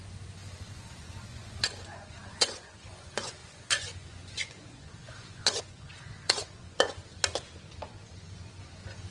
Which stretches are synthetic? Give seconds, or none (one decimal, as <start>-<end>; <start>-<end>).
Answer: 0.0-7.0; 7.9-9.1